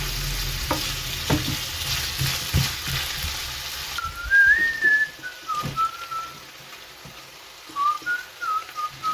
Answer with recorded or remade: recorded